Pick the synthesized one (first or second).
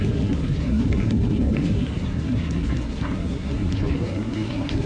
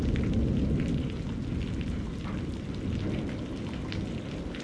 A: first